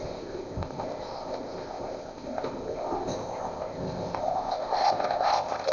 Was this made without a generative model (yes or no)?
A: no